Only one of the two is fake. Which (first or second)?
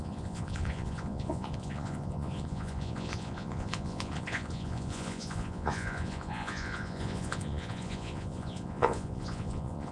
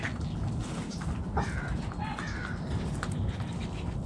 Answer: first